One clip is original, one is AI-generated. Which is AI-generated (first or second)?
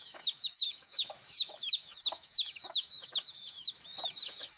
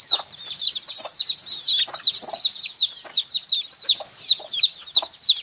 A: first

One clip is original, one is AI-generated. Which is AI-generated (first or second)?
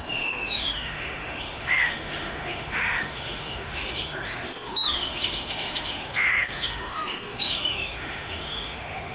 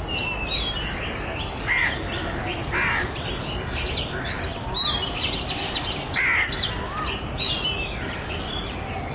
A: first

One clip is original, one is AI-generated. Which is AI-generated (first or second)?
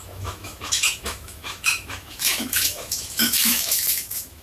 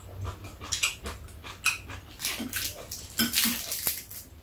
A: first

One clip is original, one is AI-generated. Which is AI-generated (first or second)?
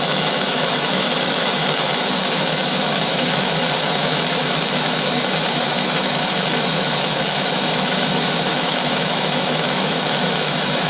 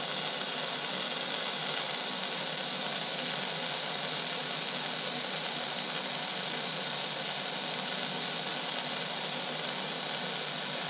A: first